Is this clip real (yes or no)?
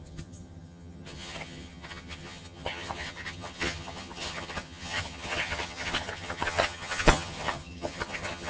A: no